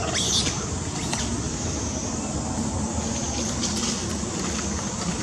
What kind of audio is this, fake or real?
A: real